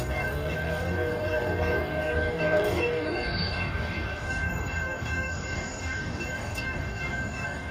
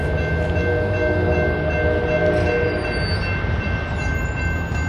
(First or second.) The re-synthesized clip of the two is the first